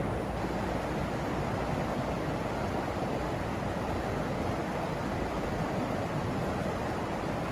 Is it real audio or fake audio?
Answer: real